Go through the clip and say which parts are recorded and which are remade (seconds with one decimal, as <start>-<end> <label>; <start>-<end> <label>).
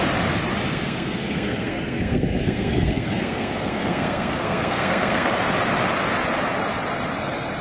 0.0-0.7 recorded; 0.7-5.3 remade; 5.3-7.6 recorded